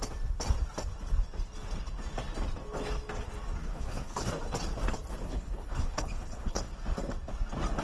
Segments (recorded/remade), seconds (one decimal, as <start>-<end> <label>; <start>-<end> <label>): 0.0-3.6 recorded; 3.6-4.3 remade; 4.3-5.2 recorded; 5.2-6.7 remade; 6.7-7.8 recorded